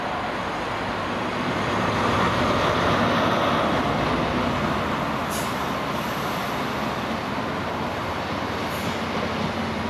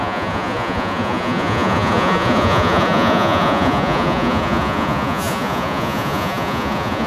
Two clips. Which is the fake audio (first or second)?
second